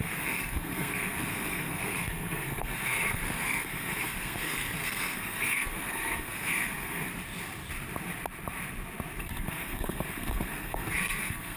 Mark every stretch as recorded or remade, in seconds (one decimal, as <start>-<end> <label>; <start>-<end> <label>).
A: 0.0-7.1 remade; 7.1-9.2 recorded; 9.2-11.6 remade